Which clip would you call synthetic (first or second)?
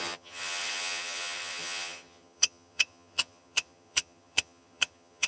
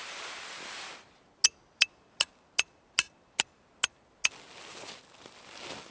first